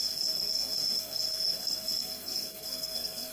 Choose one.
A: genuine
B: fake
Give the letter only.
B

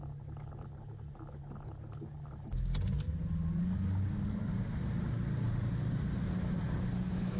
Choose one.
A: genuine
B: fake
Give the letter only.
A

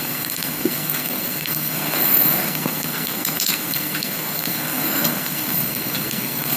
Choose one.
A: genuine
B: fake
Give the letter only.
B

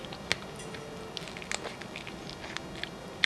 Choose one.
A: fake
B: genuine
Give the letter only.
B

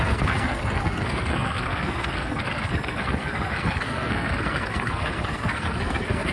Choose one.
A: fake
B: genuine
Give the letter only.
A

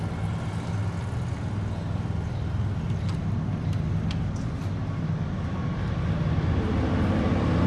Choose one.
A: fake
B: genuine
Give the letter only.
B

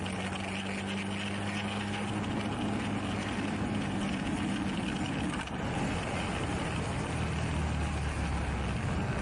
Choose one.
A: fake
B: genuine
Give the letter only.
B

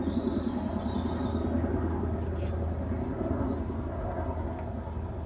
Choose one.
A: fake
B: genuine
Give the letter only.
B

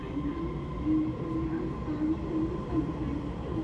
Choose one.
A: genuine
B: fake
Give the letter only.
A